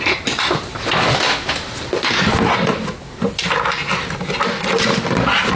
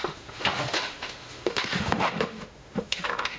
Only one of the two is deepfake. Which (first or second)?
second